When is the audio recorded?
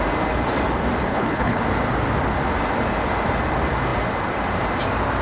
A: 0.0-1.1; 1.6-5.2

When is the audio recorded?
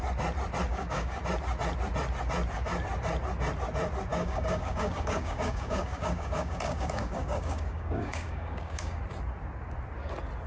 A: 0.0-0.7; 1.2-4.1; 9.0-10.5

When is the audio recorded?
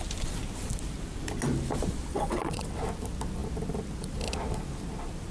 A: 0.0-2.1; 2.8-5.3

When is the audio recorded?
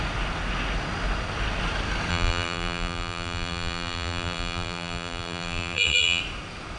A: 0.0-2.1; 6.2-6.8